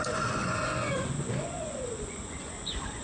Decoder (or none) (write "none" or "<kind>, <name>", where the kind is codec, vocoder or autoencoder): vocoder, Vocos